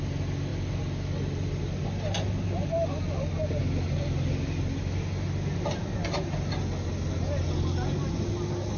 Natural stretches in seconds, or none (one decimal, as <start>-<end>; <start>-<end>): 0.0-8.8